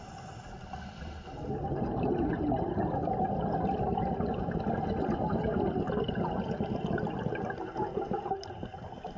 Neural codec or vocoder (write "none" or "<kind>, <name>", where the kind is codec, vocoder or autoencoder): none